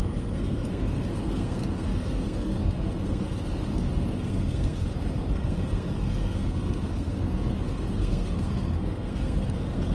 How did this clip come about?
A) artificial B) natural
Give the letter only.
A